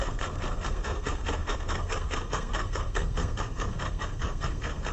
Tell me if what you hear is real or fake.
fake